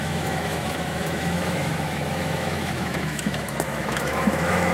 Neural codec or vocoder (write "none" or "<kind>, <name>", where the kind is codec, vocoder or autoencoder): autoencoder, DAC-VAE